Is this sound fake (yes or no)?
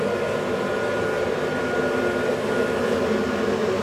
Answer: no